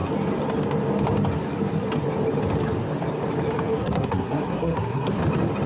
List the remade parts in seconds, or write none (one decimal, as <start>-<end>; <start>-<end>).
3.8-5.2